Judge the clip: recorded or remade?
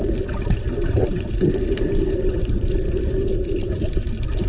recorded